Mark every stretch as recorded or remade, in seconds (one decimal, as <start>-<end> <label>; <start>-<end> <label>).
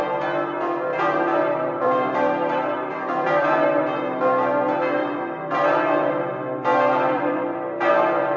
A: 0.0-0.9 recorded; 0.9-3.8 remade; 3.8-5.0 recorded; 5.0-6.1 remade; 6.1-6.7 recorded; 6.7-7.9 remade; 7.9-8.4 recorded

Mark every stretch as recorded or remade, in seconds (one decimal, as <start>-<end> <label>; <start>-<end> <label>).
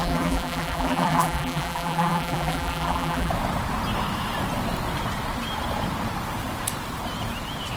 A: 0.0-3.3 remade; 3.3-7.8 recorded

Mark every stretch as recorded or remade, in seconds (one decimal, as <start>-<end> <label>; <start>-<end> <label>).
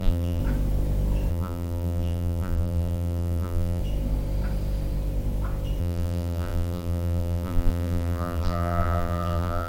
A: 0.0-0.4 remade; 0.4-1.3 recorded; 1.3-3.8 remade; 3.8-5.8 recorded; 5.8-9.7 remade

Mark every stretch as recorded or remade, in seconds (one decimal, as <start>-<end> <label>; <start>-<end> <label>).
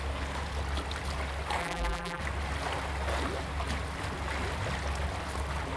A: 0.0-1.6 recorded; 1.6-2.2 remade; 2.2-5.8 recorded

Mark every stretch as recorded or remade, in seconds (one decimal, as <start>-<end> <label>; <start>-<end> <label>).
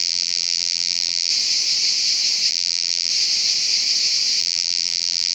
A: 0.0-1.3 remade; 1.3-2.5 recorded; 2.5-3.1 remade; 3.1-4.4 recorded; 4.4-5.3 remade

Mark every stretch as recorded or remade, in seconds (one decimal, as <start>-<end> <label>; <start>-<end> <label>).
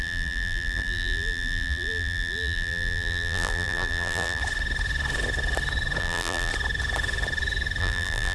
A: 0.0-4.4 remade; 4.4-6.0 recorded; 6.0-6.5 remade; 6.5-7.8 recorded; 7.8-8.3 remade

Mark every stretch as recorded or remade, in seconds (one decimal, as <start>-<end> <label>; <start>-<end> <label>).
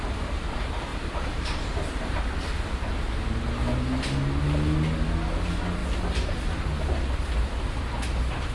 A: 0.0-0.9 recorded; 0.9-2.2 remade; 2.2-8.5 recorded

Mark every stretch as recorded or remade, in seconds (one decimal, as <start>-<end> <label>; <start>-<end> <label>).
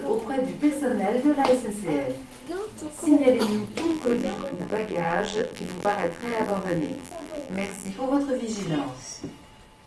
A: 0.0-3.9 recorded; 3.9-7.9 remade; 7.9-9.9 recorded